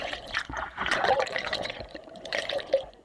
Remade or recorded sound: remade